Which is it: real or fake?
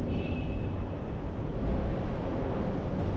real